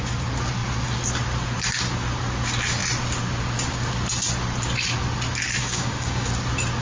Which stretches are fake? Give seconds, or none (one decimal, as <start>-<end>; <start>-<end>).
5.6-6.3